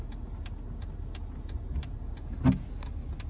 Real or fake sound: real